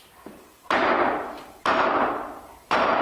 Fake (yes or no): yes